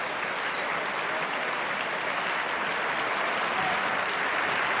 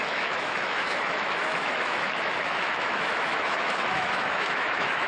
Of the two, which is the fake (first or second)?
second